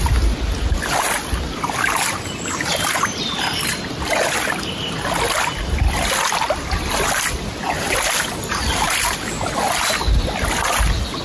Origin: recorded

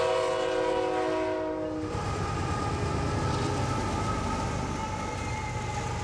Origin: recorded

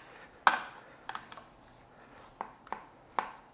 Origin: recorded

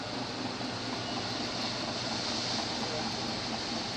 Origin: recorded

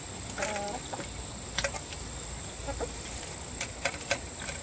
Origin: recorded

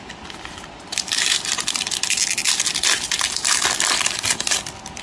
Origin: recorded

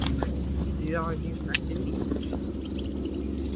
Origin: recorded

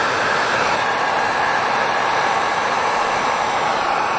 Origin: remade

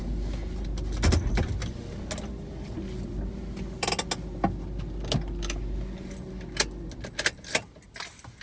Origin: recorded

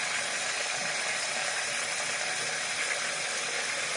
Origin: recorded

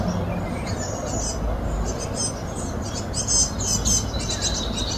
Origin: recorded